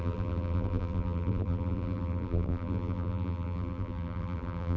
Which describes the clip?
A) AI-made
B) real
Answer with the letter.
A